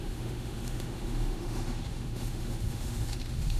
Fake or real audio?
fake